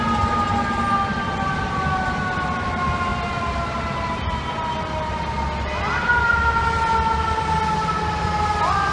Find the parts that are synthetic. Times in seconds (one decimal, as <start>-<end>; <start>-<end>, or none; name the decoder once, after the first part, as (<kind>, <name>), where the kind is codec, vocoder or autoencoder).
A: none